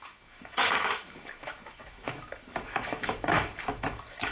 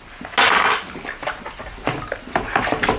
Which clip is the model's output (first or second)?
first